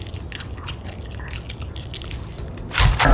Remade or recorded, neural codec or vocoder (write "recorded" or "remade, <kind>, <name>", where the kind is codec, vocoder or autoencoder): recorded